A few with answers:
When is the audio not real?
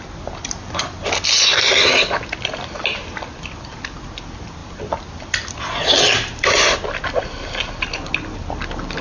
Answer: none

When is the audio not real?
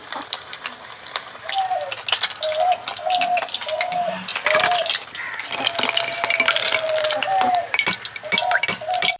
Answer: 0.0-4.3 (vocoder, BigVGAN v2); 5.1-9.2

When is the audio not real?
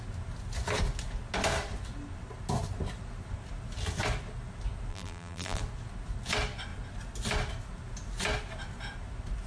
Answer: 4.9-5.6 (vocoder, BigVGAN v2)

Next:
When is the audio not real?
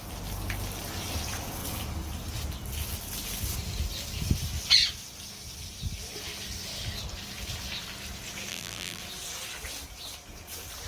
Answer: 8.5-9.0 (vocoder, BigVGAN v2)